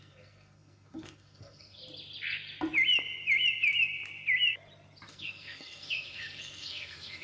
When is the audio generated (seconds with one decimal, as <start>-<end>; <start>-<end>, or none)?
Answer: 0.0-1.8; 5.1-7.2